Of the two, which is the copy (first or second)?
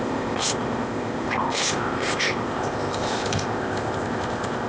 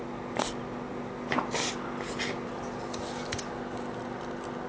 first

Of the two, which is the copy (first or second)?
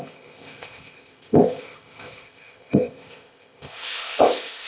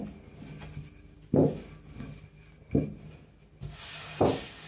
first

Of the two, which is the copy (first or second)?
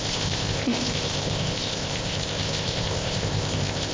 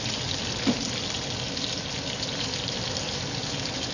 first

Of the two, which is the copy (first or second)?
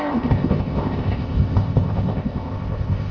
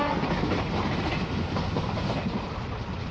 first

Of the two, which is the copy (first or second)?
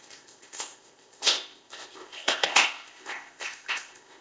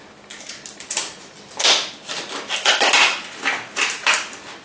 first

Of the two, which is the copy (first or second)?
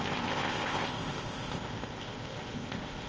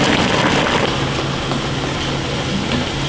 first